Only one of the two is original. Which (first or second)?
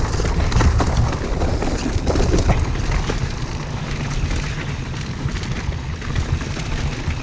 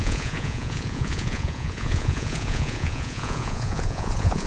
first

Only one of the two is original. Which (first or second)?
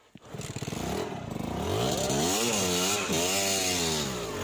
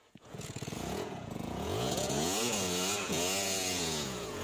first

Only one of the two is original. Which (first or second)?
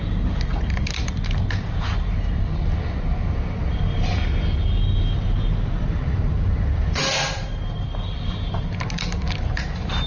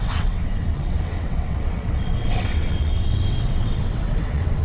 first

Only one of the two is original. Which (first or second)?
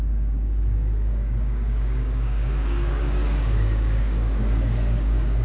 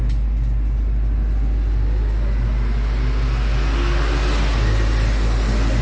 second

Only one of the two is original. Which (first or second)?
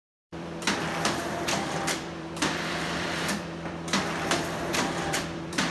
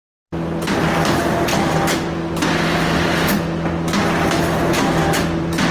second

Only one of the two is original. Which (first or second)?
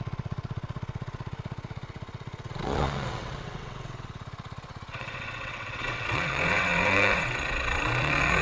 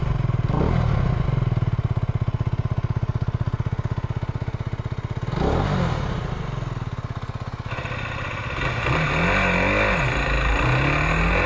second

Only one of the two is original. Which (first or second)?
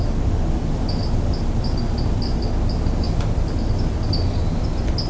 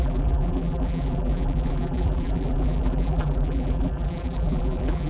first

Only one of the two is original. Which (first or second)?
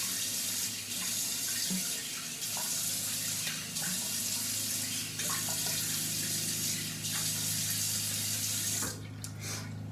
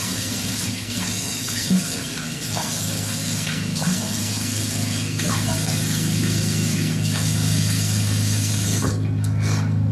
first